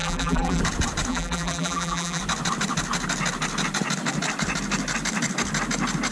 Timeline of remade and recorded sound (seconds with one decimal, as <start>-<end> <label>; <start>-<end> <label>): 0.0-0.6 remade; 0.6-1.1 recorded; 1.1-2.2 remade; 2.2-6.1 recorded